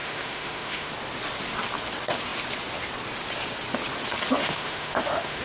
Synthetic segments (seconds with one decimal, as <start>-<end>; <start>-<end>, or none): 0.0-0.9; 4.4-5.4